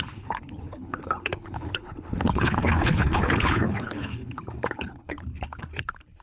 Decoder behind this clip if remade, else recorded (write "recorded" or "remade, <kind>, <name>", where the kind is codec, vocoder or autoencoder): remade, codec, HILCodec